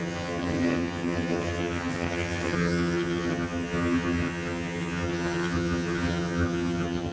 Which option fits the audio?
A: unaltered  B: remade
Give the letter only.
B